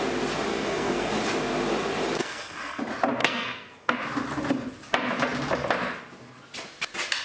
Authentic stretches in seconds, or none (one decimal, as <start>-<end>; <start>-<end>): 0.0-0.5; 1.1-2.2; 2.8-3.2; 3.9-7.2